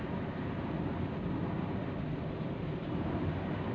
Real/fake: real